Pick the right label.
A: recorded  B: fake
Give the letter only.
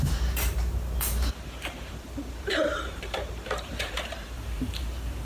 B